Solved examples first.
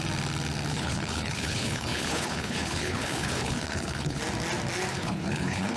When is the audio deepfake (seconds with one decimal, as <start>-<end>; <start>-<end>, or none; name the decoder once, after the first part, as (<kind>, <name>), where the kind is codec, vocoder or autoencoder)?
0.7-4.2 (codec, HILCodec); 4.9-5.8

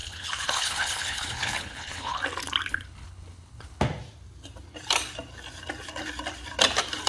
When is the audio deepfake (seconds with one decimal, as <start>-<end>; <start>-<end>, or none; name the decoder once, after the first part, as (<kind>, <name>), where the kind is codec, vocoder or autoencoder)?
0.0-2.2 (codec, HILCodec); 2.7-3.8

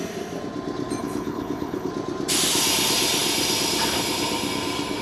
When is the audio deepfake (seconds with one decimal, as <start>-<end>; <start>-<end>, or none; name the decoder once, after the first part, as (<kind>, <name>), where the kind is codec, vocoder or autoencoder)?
1.0-1.9 (codec, HILCodec)